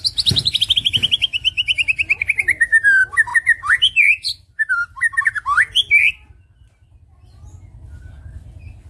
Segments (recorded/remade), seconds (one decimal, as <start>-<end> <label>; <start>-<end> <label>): 0.0-8.9 recorded